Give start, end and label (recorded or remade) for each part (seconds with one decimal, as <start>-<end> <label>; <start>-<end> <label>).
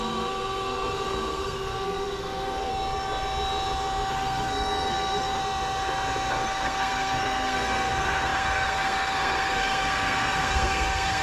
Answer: 0.0-2.7 remade; 2.7-4.1 recorded; 4.1-5.4 remade; 5.4-6.3 recorded; 6.3-11.2 remade